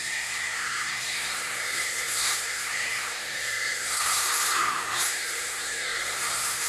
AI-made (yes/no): yes